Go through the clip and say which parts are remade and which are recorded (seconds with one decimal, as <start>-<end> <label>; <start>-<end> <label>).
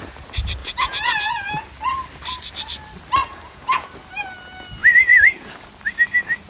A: 0.0-0.6 recorded; 0.6-1.5 remade; 1.5-3.2 recorded; 3.2-3.9 remade; 3.9-4.8 recorded; 4.8-5.5 remade; 5.5-6.5 recorded